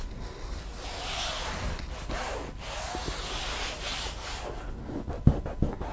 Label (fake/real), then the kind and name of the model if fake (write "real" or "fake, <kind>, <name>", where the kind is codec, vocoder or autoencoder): real